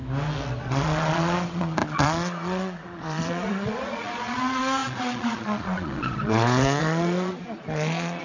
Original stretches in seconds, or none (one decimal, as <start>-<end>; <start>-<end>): 0.0-0.6